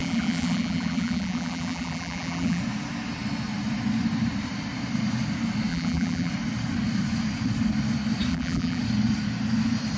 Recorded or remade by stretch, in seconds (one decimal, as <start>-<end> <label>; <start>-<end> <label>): 0.0-2.6 remade; 2.6-5.7 recorded; 5.7-6.3 remade; 6.3-8.3 recorded; 8.3-8.8 remade; 8.8-10.0 recorded